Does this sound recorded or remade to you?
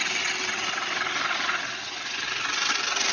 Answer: recorded